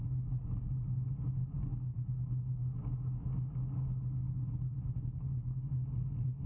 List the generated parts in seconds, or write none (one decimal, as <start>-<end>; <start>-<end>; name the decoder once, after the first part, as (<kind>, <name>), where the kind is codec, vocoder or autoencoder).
none